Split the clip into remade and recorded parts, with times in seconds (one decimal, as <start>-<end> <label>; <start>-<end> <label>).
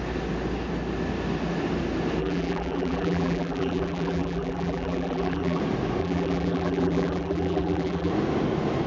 0.0-2.2 recorded; 2.2-5.6 remade; 5.6-6.0 recorded; 6.0-8.1 remade; 8.1-8.9 recorded